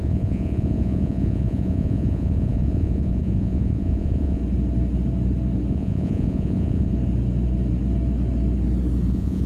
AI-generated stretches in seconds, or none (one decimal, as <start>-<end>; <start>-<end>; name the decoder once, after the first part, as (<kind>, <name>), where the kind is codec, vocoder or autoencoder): 0.0-4.4 (vocoder, Vocos); 5.7-6.9; 9.1-9.5